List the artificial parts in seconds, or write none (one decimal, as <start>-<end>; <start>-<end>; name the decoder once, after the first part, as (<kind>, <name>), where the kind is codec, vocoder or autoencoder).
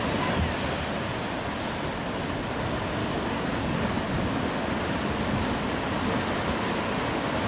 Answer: 3.0-4.0 (codec, DAC)